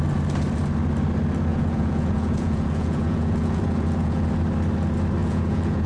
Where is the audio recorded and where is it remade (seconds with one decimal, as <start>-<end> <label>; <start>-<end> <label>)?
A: 0.0-1.5 recorded; 1.5-4.3 remade; 4.3-5.2 recorded; 5.2-5.9 remade